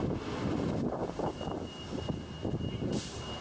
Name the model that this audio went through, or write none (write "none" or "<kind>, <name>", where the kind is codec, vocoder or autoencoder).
none